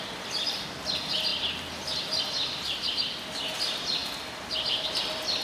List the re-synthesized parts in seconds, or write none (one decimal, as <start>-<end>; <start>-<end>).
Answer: 2.4-2.9